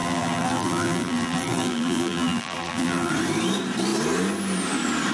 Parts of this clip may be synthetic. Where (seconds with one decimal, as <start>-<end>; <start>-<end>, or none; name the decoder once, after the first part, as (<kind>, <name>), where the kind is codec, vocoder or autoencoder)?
0.0-3.1 (vocoder, BigVGAN v2)